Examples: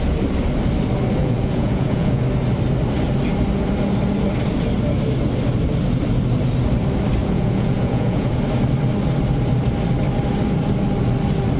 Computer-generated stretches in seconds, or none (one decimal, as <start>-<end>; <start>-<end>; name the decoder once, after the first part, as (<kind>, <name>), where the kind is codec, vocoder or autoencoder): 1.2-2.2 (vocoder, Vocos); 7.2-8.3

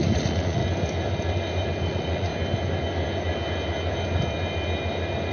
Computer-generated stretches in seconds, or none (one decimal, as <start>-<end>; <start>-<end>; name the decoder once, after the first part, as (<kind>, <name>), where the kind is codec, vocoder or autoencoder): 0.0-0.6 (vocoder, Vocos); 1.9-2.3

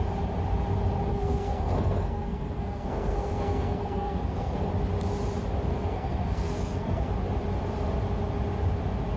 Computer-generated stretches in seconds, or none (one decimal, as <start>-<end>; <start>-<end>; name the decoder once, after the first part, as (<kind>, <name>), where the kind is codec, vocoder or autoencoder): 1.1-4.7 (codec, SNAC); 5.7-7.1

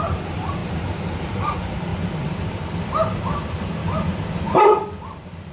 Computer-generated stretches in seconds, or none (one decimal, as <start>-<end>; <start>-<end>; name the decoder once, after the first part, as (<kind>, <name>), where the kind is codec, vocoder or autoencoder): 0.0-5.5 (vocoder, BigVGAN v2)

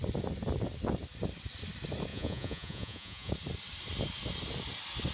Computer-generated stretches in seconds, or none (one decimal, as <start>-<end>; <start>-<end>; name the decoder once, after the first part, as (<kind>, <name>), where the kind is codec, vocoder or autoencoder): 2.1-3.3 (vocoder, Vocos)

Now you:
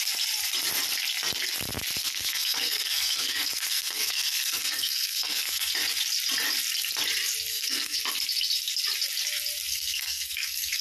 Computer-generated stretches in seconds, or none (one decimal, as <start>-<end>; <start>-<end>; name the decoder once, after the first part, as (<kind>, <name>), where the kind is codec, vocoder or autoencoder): 2.0-5.7 (codec, SNAC); 7.5-8.0; 9.7-10.8